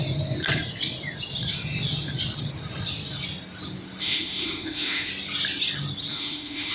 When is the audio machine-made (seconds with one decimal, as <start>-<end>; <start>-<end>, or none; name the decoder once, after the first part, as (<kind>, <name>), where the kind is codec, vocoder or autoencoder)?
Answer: 4.0-5.1 (autoencoder, DAC-VAE); 6.1-6.7